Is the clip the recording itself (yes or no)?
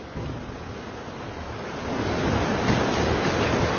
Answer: yes